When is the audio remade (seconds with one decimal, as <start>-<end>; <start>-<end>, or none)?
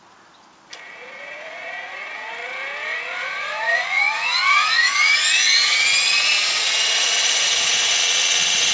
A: 0.7-2.3; 2.9-8.0